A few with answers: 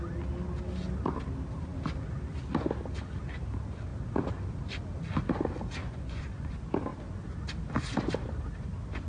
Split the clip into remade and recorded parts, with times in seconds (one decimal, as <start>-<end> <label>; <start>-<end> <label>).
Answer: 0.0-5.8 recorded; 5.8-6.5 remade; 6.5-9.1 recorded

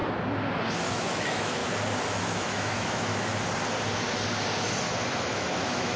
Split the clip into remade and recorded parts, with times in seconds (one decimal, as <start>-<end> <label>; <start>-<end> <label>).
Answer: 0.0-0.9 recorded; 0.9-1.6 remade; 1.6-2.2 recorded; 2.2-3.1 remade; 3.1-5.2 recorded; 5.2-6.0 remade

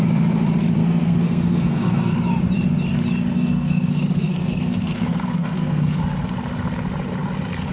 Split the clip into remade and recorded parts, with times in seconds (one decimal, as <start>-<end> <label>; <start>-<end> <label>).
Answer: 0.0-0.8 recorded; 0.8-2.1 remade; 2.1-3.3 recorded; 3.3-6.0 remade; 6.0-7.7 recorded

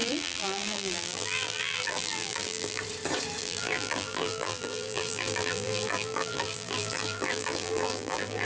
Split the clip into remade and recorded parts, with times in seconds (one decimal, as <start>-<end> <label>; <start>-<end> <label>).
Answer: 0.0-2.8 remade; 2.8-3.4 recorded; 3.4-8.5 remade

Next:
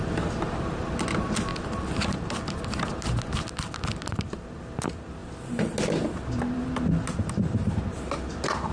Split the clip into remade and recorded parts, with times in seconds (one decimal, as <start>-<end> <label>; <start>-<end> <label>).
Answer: 0.0-8.7 recorded

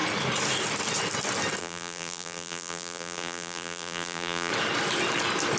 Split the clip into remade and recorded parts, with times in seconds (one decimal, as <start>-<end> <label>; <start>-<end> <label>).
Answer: 0.0-1.6 recorded; 1.6-4.5 remade; 4.5-5.6 recorded